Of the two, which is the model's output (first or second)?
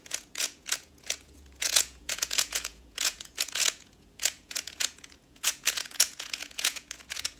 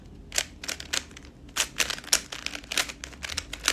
first